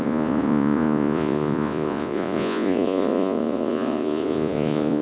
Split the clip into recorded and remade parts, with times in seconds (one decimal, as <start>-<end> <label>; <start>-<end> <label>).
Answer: 0.0-5.0 remade